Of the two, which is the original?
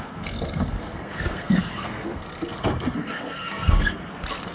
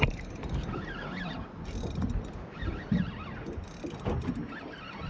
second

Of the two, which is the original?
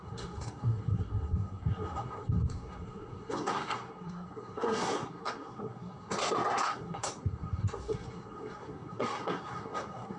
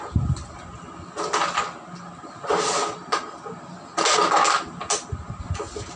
second